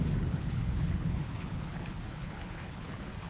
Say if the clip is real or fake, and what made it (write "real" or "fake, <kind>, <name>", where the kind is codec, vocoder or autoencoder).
fake, codec, HILCodec